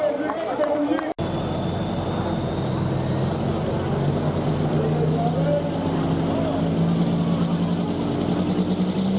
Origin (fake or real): real